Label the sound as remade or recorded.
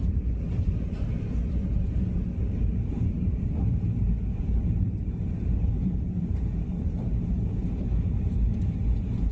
remade